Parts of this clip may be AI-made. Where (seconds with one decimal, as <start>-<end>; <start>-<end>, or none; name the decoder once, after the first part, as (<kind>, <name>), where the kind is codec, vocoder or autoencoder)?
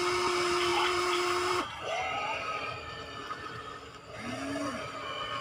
0.7-3.9 (vocoder, BigVGAN v2)